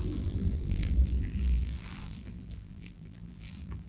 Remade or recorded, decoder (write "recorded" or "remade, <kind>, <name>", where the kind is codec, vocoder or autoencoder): remade, vocoder, BigVGAN v2